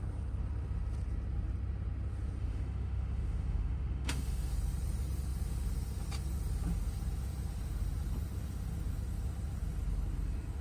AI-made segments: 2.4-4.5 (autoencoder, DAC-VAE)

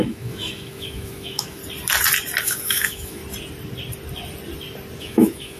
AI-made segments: 0.0-1.6 (autoencoder, DAC-VAE); 2.4-3.2; 5.0-5.6